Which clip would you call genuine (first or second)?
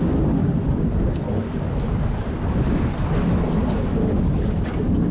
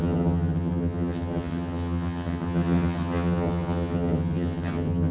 first